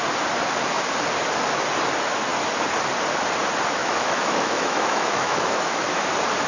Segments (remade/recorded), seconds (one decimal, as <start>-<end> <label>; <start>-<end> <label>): 0.0-3.8 recorded; 3.8-6.1 remade; 6.1-6.5 recorded